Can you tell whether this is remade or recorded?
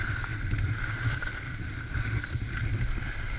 recorded